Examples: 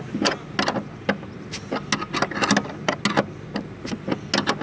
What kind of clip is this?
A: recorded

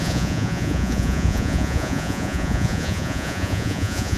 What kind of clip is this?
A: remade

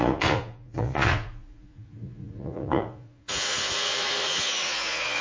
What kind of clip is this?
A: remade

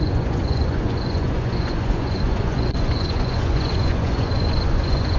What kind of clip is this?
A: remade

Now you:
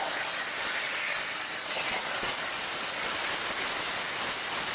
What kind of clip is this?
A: recorded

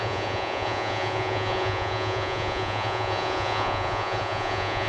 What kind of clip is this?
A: remade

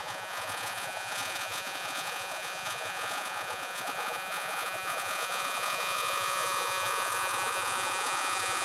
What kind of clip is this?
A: remade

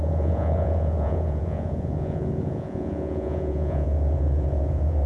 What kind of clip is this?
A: remade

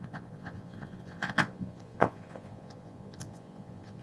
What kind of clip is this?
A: remade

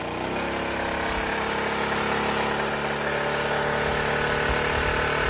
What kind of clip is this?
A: recorded